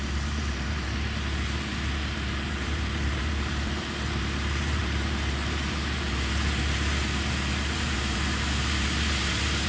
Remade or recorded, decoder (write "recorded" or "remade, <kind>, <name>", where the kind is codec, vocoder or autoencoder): remade, vocoder, BigVGAN v2